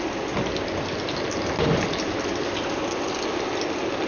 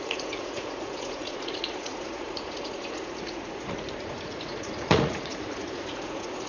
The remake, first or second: second